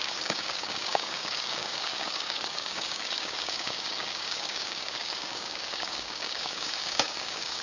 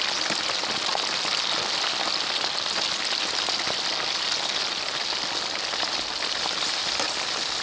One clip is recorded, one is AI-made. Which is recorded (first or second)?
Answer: second